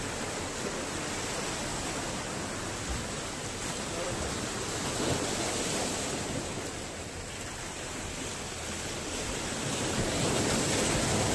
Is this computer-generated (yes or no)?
no